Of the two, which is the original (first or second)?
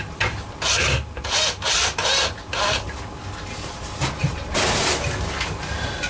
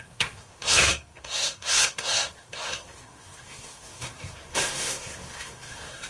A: first